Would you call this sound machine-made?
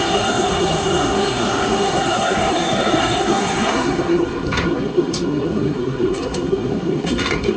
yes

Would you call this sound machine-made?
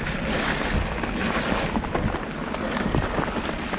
no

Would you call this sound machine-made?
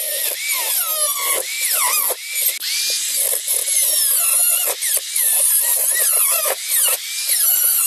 no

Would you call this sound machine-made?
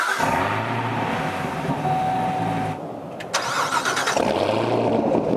no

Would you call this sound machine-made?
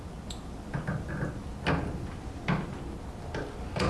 no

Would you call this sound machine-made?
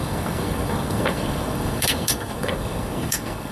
yes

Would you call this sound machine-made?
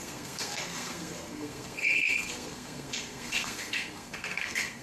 yes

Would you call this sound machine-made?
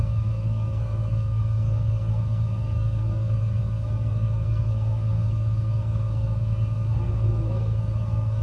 yes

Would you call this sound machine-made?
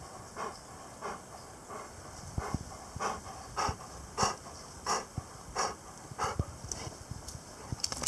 no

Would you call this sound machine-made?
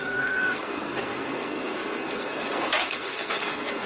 yes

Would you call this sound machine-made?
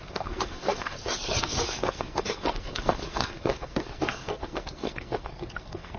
yes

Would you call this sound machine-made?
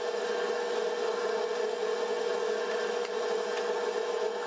no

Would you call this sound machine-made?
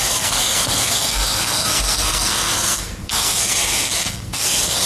yes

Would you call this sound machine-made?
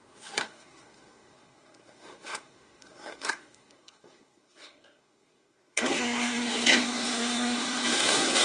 yes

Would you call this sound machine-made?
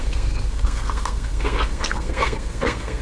yes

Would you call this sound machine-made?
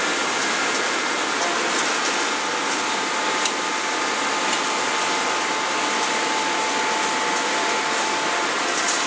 no